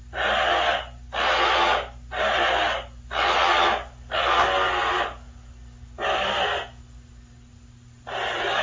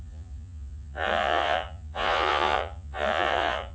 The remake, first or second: second